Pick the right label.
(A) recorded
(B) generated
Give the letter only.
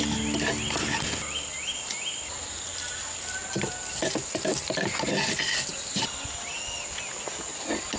A